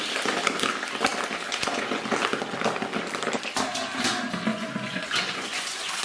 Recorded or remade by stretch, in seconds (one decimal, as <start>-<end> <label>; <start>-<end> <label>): 0.0-1.5 recorded; 1.5-2.0 remade; 2.0-4.5 recorded; 4.5-6.0 remade